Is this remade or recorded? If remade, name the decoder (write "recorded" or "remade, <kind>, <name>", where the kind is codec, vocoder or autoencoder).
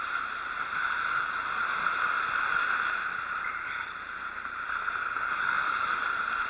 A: recorded